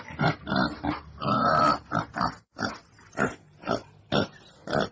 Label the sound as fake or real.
real